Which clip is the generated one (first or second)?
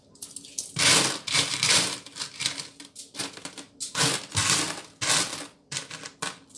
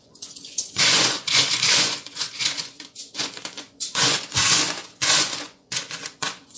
second